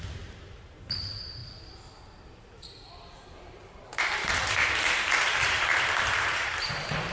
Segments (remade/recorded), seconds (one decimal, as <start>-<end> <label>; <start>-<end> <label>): 0.0-1.4 remade; 1.4-2.0 recorded; 2.0-7.1 remade